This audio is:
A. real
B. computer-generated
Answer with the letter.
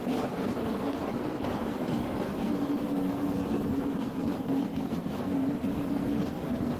B